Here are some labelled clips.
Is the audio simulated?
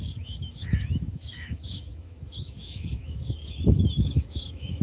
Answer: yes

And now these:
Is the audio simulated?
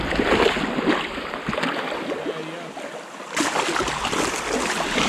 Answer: no